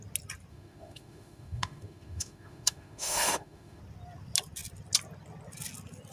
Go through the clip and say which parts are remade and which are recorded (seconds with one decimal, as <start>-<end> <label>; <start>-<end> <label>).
0.0-0.5 recorded; 0.5-3.8 remade; 3.8-6.1 recorded